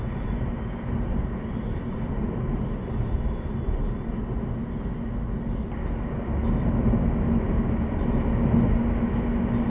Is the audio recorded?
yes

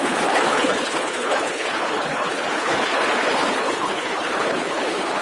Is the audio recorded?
no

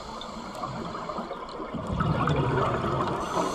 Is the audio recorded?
yes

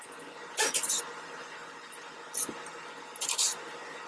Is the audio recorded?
yes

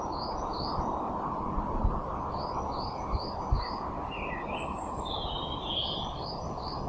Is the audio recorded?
yes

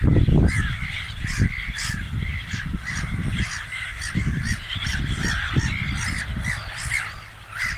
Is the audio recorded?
yes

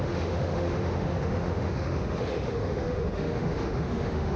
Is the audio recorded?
no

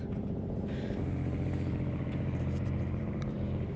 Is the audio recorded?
no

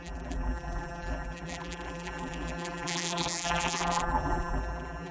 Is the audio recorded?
no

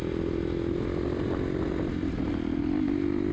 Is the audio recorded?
yes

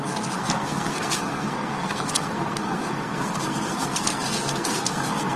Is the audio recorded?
no